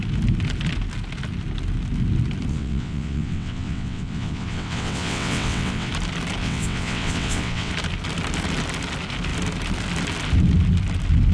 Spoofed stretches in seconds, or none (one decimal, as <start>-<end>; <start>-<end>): 2.5-5.9; 6.4-7.7